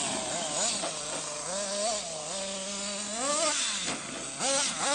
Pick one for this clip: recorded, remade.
recorded